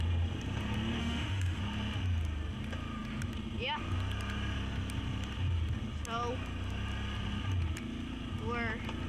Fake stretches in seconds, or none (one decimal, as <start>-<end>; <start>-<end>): 1.0-1.6